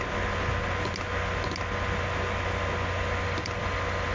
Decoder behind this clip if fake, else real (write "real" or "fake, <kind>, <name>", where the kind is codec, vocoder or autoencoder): real